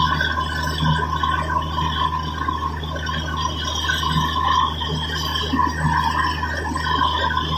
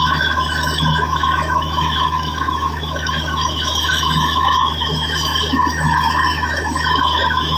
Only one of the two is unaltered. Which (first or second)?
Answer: first